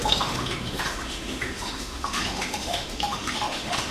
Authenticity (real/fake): fake